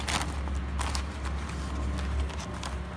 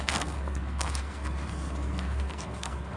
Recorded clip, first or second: first